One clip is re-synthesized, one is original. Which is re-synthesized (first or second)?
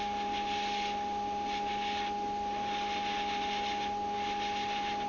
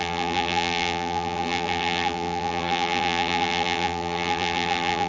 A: second